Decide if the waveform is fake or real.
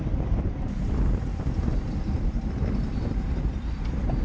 real